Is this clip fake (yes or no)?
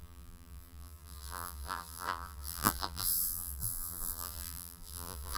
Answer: yes